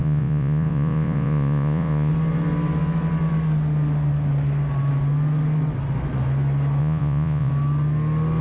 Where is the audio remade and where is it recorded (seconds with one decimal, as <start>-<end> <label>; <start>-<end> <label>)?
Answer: 0.0-2.1 remade; 2.1-6.8 recorded; 6.8-7.5 remade; 7.5-8.4 recorded